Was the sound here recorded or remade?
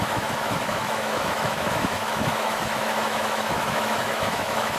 remade